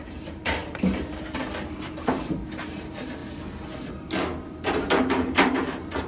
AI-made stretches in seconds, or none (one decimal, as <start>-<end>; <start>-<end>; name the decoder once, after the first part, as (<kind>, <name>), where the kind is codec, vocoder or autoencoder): 0.0-3.2 (vocoder, BigVGAN v2); 4.9-6.1